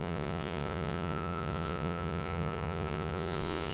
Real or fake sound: fake